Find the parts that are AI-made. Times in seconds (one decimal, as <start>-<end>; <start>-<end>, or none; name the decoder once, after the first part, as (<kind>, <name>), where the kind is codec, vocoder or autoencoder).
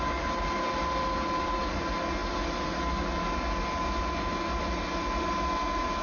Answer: none